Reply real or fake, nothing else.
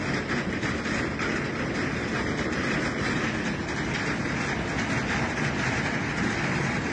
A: real